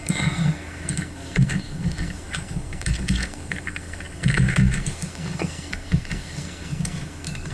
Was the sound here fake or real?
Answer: fake